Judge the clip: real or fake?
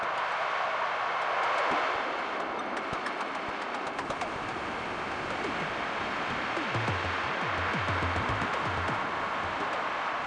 real